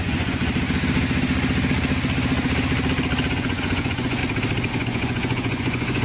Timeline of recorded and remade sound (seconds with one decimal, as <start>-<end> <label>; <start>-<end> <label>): 0.0-0.5 remade; 0.5-3.3 recorded; 3.3-4.2 remade; 4.2-4.7 recorded; 4.7-6.0 remade